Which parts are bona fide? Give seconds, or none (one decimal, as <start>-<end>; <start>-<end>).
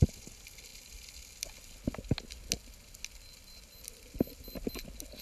0.0-5.2